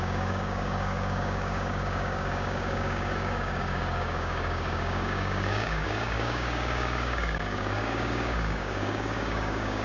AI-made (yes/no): yes